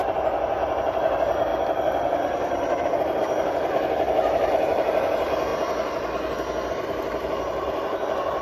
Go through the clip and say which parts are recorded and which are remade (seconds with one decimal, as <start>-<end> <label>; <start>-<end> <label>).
0.0-5.5 remade; 5.5-6.7 recorded; 6.7-8.4 remade